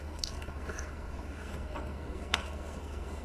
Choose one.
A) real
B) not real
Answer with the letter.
B